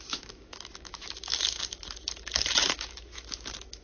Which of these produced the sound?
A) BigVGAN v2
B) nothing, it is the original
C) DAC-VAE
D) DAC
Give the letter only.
C